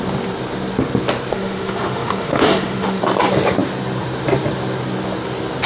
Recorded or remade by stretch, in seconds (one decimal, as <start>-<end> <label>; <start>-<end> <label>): 0.0-1.3 recorded; 1.3-3.0 remade; 3.0-5.7 recorded